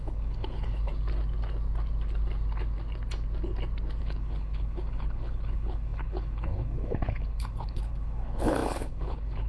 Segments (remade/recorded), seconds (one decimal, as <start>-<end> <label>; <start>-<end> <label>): 0.0-0.9 remade; 0.9-4.0 recorded; 4.0-9.5 remade